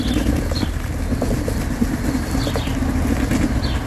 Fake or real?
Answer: real